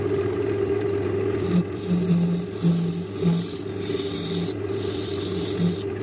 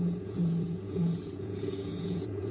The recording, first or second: first